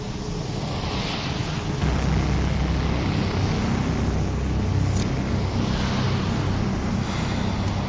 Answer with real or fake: real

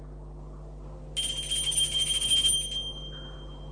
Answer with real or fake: real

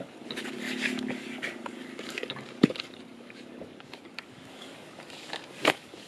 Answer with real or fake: fake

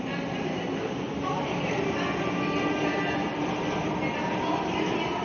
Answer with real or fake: real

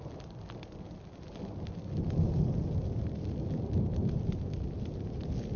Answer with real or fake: real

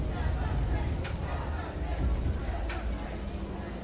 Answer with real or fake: real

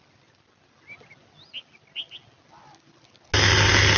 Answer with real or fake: real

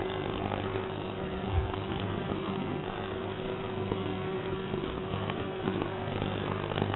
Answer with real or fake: fake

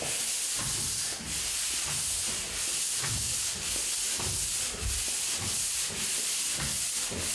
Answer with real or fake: real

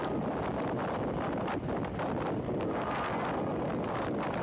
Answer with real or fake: real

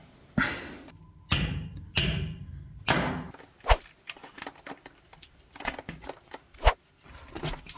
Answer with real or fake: real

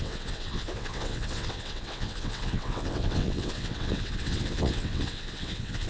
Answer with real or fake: fake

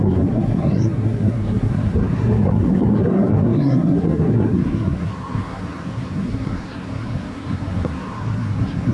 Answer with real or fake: fake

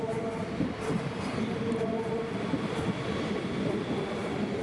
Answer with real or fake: real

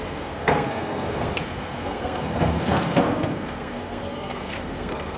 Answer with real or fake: fake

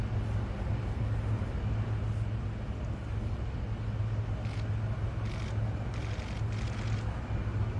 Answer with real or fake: real